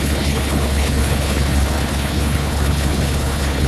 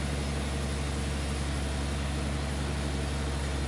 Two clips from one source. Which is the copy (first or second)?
first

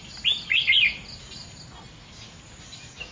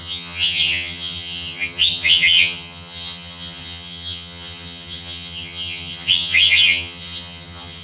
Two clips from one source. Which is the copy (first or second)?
second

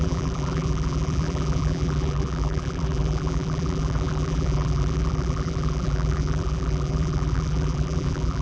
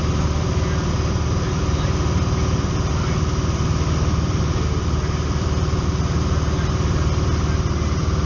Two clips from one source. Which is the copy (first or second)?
first